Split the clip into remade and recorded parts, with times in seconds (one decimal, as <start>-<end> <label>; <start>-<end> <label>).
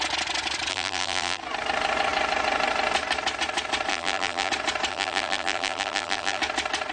0.0-0.7 recorded; 0.7-1.4 remade; 1.4-3.9 recorded; 3.9-4.5 remade; 4.5-4.9 recorded; 4.9-6.4 remade; 6.4-6.9 recorded